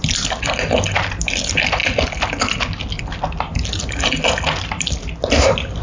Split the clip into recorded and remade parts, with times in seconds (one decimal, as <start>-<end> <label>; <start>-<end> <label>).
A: 0.0-5.8 recorded